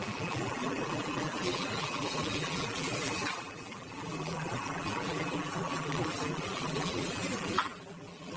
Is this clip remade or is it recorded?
remade